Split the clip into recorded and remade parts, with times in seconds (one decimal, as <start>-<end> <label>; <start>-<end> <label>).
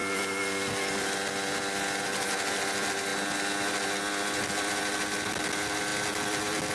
0.0-6.7 recorded